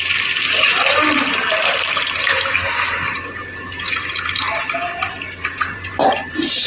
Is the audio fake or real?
fake